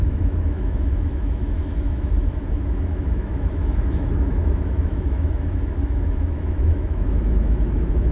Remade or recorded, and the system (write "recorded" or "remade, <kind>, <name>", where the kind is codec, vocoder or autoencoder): remade, autoencoder, DAC-VAE